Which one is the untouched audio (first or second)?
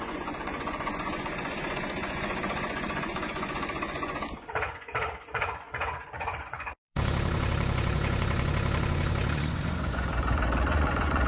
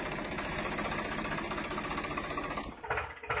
second